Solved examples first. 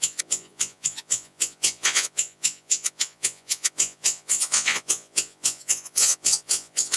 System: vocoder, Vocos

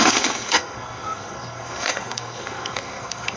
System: codec, SNAC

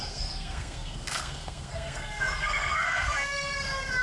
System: codec, SNAC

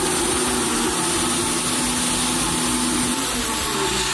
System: none